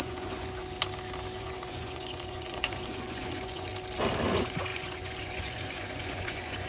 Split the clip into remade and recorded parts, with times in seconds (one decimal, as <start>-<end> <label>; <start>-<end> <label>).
0.0-0.6 remade; 0.6-1.4 recorded; 1.4-3.7 remade; 3.7-4.3 recorded; 4.3-6.7 remade